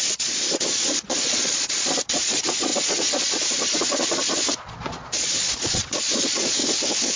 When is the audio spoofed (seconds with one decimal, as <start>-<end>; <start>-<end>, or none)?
0.0-6.6